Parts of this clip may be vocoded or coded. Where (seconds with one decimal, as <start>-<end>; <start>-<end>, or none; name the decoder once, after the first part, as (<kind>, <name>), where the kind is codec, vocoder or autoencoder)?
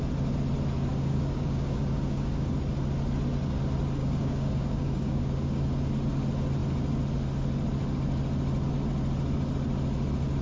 0.9-2.5 (codec, DAC); 4.0-5.6